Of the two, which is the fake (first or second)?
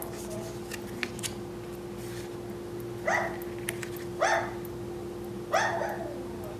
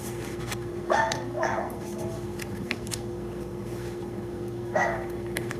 second